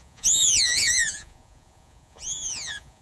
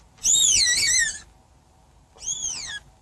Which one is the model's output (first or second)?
first